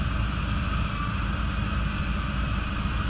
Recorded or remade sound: recorded